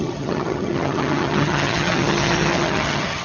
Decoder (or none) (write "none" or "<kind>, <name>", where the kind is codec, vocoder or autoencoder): vocoder, HiFi-GAN